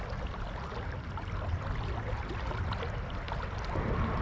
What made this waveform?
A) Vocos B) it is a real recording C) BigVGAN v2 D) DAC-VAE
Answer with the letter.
B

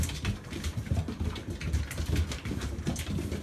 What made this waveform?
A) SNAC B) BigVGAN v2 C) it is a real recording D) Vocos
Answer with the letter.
C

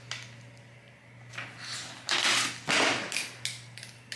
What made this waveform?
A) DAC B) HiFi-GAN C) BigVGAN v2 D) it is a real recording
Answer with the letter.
D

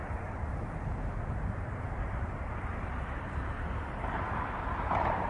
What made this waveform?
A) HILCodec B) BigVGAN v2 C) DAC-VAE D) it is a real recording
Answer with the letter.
B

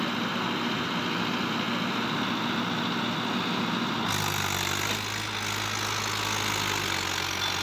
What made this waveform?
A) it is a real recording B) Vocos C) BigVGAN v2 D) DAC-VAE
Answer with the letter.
A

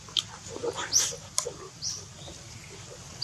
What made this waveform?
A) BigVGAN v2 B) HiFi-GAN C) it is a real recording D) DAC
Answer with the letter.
C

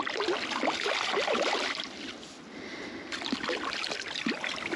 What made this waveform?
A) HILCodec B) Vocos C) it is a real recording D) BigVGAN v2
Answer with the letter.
C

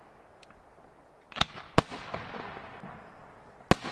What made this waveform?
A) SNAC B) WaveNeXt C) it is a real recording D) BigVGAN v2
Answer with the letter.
C